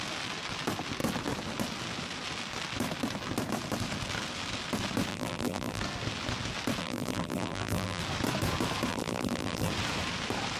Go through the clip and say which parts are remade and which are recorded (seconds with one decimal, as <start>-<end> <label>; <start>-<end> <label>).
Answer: 0.0-5.1 recorded; 5.1-5.8 remade; 5.8-6.8 recorded; 6.8-8.0 remade; 8.0-8.9 recorded; 8.9-9.7 remade; 9.7-10.6 recorded